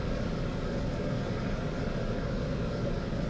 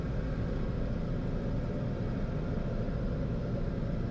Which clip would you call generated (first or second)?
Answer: first